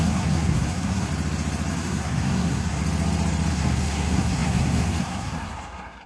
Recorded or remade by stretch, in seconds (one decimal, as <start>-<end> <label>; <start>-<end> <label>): 0.0-1.1 remade; 1.1-1.7 recorded; 1.7-2.8 remade; 2.8-3.5 recorded; 3.5-6.1 remade